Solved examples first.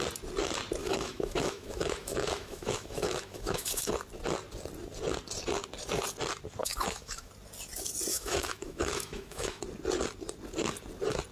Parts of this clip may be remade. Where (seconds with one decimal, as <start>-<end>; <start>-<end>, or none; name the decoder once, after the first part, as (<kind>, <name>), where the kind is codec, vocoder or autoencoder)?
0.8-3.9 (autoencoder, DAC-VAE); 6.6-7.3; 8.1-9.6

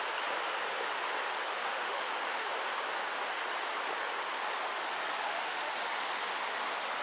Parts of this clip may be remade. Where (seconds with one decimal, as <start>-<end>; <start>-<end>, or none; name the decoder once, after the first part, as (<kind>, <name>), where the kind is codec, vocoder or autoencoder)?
1.6-2.5 (autoencoder, DAC-VAE); 5.2-5.7

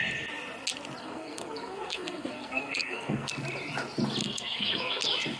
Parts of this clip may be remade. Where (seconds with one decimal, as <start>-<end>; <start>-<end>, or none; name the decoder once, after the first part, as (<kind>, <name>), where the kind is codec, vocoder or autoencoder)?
1.0-3.3 (codec, SNAC); 4.2-5.0

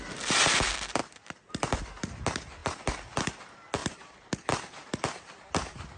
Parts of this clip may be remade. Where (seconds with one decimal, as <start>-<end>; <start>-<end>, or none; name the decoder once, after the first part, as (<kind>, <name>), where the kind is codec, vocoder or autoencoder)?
none

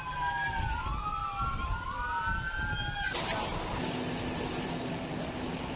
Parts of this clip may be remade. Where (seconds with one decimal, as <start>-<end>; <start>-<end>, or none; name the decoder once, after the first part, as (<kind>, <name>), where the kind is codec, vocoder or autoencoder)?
none

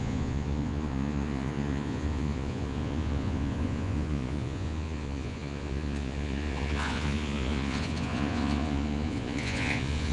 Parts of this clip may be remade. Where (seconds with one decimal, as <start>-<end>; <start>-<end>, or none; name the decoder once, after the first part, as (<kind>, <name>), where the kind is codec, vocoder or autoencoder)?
0.0-10.1 (vocoder, Vocos)

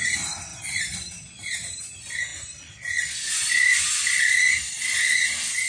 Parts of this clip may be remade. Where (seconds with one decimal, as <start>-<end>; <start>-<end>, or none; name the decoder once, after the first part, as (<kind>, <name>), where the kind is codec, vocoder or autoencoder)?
0.5-1.8 (vocoder, BigVGAN v2)